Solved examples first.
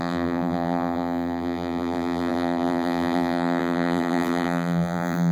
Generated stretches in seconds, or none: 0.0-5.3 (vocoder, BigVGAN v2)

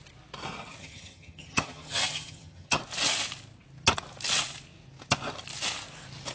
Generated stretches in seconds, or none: 0.8-2.8 (vocoder, HiFi-GAN)

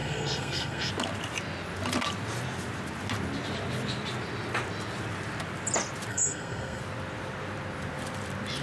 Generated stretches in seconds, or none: 0.0-0.9 (codec, SNAC); 6.1-6.8

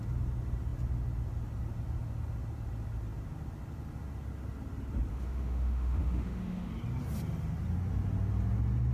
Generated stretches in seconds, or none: 5.1-6.7 (autoencoder, DAC-VAE)